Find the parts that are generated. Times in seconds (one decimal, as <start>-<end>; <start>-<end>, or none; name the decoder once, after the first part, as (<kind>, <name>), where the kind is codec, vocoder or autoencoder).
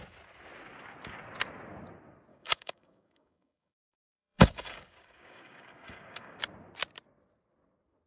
2.3-6.4 (codec, DAC)